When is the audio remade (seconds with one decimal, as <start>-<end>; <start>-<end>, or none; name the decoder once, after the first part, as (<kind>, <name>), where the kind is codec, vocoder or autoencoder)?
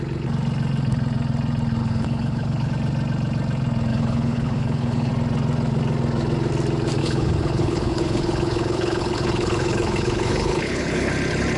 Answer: 1.8-2.7 (codec, HILCodec); 3.9-5.1; 7.0-11.1